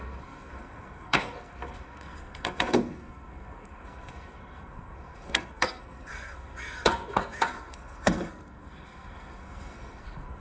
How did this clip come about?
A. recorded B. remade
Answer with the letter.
B